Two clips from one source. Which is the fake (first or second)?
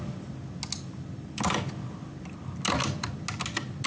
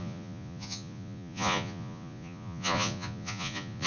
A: second